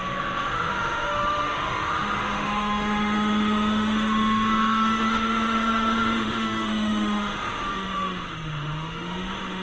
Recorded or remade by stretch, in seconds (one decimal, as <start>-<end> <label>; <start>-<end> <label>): 0.0-9.6 remade